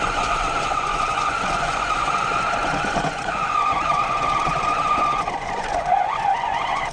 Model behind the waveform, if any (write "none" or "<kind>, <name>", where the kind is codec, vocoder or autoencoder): vocoder, Vocos